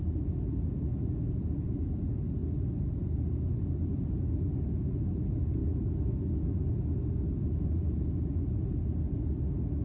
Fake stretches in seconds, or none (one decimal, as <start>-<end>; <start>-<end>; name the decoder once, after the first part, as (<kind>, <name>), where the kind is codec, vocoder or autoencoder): none